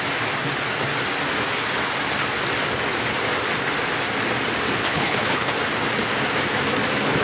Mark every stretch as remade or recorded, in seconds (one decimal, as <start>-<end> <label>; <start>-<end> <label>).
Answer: 0.0-4.8 recorded; 4.8-5.5 remade; 5.5-7.2 recorded